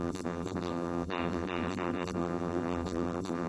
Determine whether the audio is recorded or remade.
remade